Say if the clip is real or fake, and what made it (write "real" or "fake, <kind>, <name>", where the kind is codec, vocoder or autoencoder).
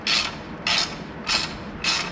real